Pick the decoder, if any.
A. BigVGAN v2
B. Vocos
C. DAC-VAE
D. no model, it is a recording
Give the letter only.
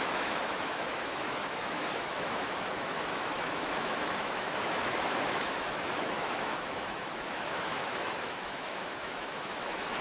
C